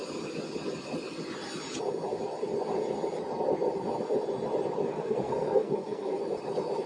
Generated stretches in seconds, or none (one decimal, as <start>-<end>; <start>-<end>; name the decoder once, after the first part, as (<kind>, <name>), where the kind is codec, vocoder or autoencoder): 4.9-6.2 (codec, SNAC)